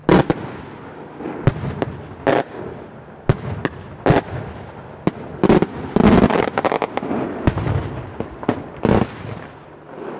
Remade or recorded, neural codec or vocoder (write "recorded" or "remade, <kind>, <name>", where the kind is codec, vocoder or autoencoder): recorded